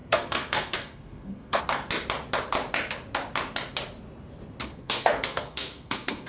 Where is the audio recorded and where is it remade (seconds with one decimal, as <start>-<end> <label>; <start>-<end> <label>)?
0.0-1.6 remade; 1.6-4.6 recorded; 4.6-6.3 remade

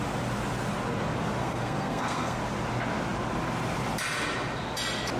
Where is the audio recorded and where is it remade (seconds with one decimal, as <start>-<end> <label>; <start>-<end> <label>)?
0.0-1.4 recorded; 1.4-2.4 remade; 2.4-5.2 recorded

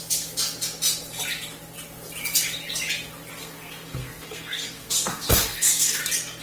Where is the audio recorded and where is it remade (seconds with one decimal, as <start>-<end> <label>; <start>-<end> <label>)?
0.0-3.4 recorded; 3.4-6.0 remade; 6.0-6.4 recorded

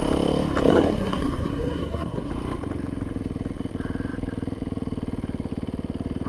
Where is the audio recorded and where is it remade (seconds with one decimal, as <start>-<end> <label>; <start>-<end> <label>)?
0.0-0.7 recorded; 0.7-2.3 remade; 2.3-6.3 recorded

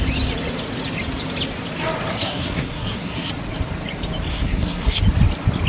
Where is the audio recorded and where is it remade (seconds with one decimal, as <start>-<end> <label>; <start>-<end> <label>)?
0.0-2.1 recorded; 2.1-3.3 remade; 3.3-4.3 recorded; 4.3-5.0 remade; 5.0-5.7 recorded

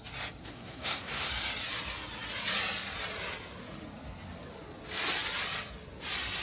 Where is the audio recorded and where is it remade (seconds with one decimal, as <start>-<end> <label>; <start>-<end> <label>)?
0.0-0.4 recorded; 0.4-1.3 remade; 1.3-6.4 recorded